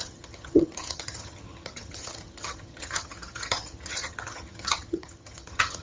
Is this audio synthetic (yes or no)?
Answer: yes